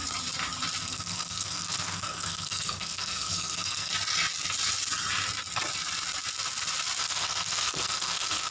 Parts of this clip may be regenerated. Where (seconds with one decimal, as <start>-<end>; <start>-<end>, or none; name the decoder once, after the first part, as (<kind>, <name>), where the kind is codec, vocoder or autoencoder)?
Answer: 0.8-3.9 (codec, SNAC); 7.0-8.5